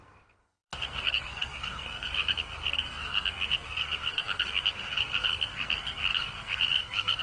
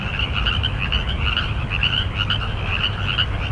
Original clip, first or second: second